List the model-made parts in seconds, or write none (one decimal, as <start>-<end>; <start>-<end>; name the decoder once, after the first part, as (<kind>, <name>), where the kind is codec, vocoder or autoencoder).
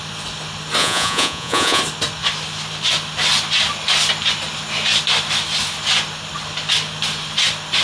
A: 0.8-1.8 (vocoder, Vocos)